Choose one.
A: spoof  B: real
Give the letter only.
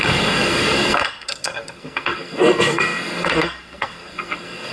A